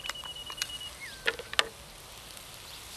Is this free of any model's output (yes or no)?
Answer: yes